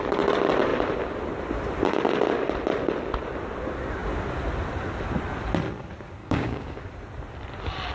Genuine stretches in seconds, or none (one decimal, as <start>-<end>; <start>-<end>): 0.0-6.2; 6.8-7.9